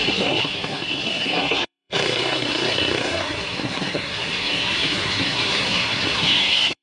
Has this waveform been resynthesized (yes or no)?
yes